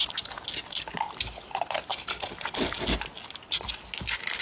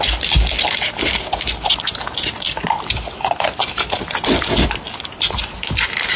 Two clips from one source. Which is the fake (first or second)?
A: second